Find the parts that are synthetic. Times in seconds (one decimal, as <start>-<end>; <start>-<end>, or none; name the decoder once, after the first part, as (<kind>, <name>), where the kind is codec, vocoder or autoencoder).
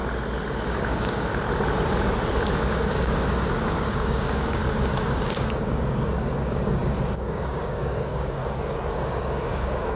0.7-1.3 (codec, DAC); 2.6-8.4; 8.9-10.0